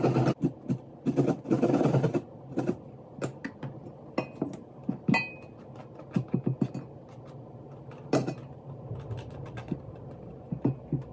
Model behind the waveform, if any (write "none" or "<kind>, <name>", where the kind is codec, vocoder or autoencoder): none